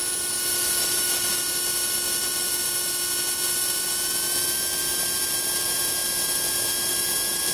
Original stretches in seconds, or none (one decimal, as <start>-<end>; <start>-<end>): 0.0-0.5; 1.4-7.5